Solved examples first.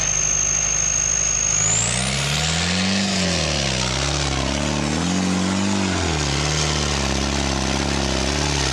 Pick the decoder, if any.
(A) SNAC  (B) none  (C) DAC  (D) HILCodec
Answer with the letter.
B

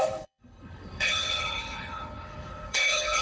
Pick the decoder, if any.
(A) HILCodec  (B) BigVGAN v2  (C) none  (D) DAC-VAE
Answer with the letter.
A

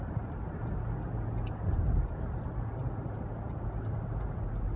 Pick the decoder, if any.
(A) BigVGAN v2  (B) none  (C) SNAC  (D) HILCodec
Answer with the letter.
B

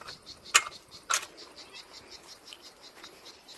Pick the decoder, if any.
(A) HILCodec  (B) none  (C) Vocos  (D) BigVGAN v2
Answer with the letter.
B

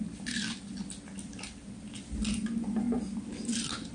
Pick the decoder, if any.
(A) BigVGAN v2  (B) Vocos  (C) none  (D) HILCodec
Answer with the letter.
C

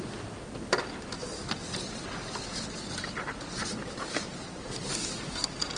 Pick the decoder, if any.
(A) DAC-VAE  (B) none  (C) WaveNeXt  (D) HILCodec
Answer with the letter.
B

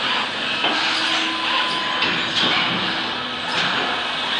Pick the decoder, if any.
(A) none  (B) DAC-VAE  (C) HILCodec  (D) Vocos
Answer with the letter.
A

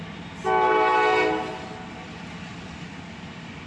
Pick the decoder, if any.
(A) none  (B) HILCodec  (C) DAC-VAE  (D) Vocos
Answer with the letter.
A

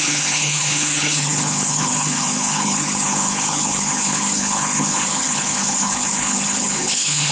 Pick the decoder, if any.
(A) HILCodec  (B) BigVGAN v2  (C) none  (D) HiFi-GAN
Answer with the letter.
A